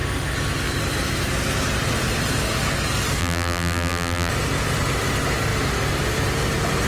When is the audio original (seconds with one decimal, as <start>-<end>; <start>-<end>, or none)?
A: 0.0-3.2; 4.3-6.9